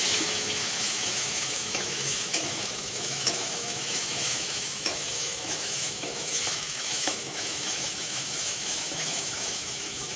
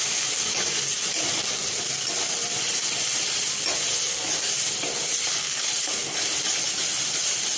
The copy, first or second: first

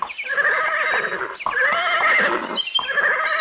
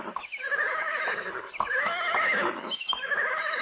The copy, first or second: second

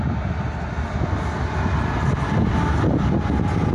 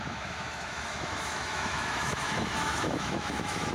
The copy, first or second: second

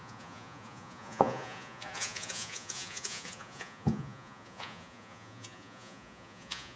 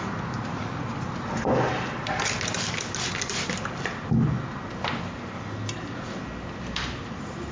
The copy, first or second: first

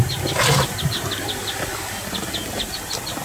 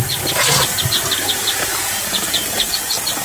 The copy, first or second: first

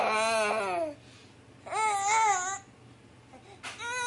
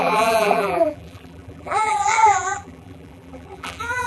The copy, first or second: second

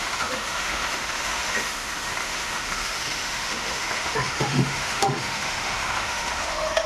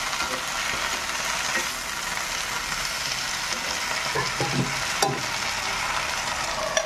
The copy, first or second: first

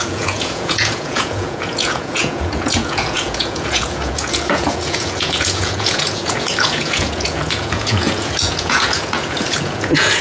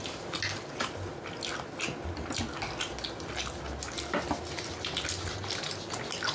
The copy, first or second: first